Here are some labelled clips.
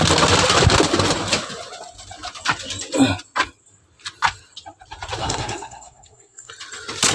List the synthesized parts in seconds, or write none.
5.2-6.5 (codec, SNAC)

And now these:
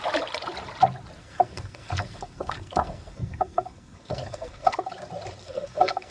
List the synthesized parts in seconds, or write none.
1.2-4.9 (codec, SNAC); 5.4-6.1

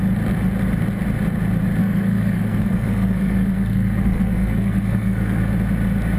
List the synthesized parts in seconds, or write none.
1.8-5.5 (codec, SNAC)

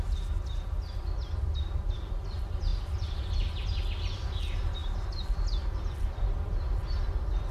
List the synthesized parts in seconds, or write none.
none